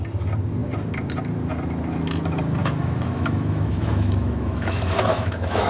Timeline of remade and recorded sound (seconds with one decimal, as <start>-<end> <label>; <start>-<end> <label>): 0.0-2.6 recorded; 2.6-5.7 remade

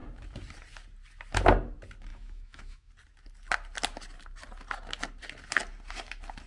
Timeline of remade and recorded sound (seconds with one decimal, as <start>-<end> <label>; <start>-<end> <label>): 0.0-2.1 recorded; 2.1-2.9 remade; 2.9-6.5 recorded

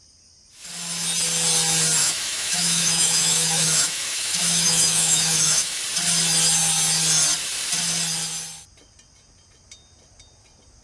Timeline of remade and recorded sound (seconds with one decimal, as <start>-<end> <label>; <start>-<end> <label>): 0.0-2.0 recorded; 2.0-5.8 remade; 5.8-10.8 recorded

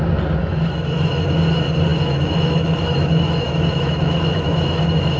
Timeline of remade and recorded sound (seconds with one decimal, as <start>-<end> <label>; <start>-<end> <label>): 0.0-0.4 recorded; 0.4-1.1 remade; 1.1-1.9 recorded; 1.9-5.2 remade

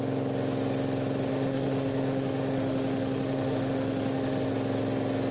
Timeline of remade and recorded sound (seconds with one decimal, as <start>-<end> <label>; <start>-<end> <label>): 0.0-1.3 recorded; 1.3-4.5 remade; 4.5-5.3 recorded

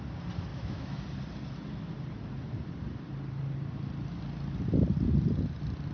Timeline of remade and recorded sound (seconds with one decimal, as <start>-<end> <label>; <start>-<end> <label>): 0.0-0.5 recorded; 0.5-1.0 remade; 1.0-5.9 recorded